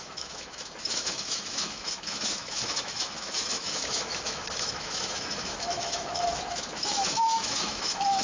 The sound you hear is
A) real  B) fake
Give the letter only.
B